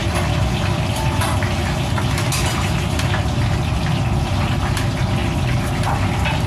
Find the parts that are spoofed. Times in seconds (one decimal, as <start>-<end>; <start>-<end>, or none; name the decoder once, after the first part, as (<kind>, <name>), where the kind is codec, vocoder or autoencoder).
none